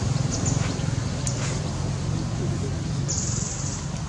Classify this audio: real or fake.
real